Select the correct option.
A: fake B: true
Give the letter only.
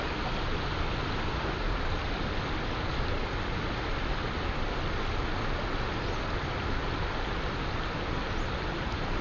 B